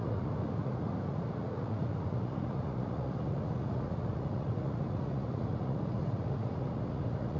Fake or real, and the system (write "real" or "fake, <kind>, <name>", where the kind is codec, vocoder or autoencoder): fake, vocoder, Vocos